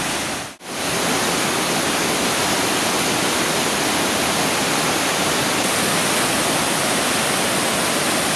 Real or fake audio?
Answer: real